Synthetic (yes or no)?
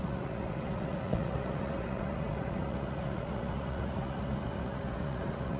yes